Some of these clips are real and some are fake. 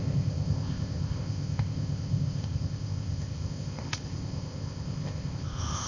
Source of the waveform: fake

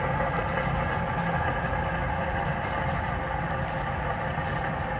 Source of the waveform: real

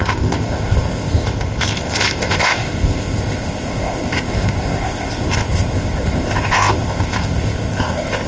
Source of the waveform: fake